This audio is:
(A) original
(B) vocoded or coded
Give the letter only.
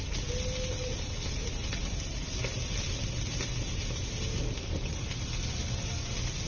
A